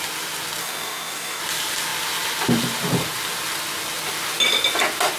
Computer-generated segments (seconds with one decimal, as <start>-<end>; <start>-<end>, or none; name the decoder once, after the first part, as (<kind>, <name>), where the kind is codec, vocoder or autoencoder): 0.6-1.4 (codec, DAC)